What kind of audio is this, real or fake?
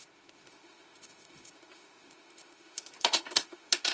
fake